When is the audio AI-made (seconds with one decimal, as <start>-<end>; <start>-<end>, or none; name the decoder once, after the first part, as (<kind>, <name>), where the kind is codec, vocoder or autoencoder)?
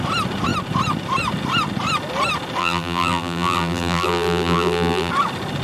2.6-5.1 (vocoder, BigVGAN v2)